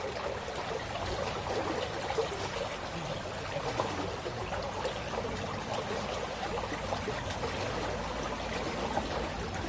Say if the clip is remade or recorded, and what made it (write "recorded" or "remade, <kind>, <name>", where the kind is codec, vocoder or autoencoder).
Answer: recorded